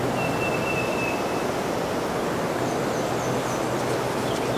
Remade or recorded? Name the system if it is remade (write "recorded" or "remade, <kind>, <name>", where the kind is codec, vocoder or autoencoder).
recorded